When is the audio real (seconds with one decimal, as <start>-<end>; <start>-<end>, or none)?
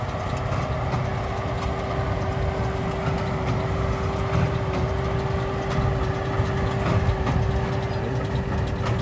0.0-9.0